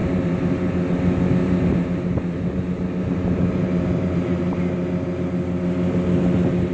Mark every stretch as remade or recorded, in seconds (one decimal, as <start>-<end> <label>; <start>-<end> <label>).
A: 0.0-0.7 remade; 0.7-1.4 recorded; 1.4-4.7 remade; 4.7-6.7 recorded